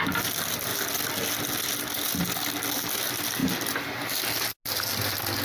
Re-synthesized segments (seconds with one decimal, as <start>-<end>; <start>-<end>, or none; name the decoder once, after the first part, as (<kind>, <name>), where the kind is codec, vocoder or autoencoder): none